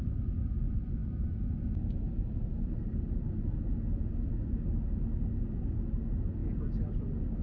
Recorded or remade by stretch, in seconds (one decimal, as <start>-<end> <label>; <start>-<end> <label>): 0.0-7.4 recorded